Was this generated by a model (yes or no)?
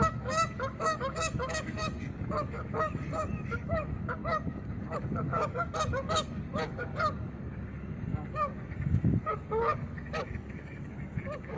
yes